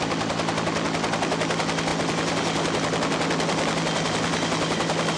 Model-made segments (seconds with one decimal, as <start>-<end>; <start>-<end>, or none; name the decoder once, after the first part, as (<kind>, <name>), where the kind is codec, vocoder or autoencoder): none